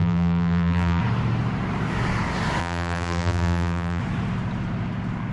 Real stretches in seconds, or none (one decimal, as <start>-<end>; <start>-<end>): 1.0-2.6; 4.0-5.3